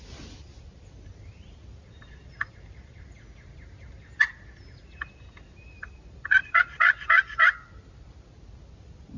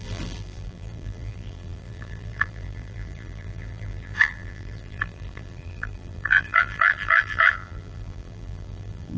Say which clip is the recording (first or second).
first